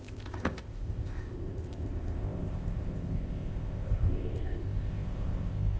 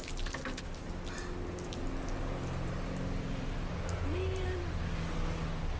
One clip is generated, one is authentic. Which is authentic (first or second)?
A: second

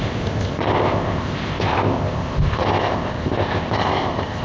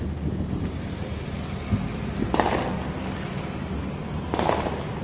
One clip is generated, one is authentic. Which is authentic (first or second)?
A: second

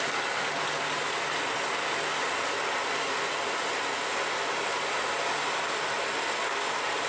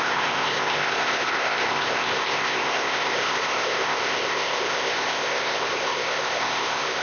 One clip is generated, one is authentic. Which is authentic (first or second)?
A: first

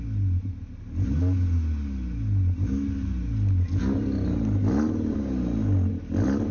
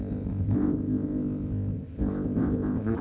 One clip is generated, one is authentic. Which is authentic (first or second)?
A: first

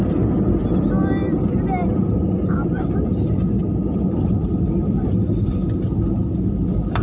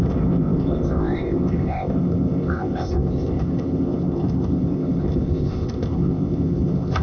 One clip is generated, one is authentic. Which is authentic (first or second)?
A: first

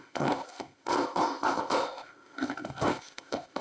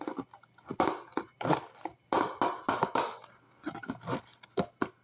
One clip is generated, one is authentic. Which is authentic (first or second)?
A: second